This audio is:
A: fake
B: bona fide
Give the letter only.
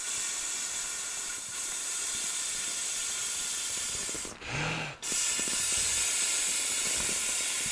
B